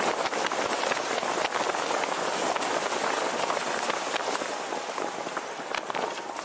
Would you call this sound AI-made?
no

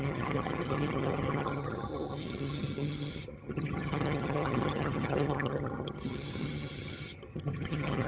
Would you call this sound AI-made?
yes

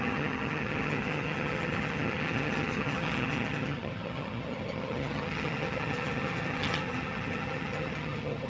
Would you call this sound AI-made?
yes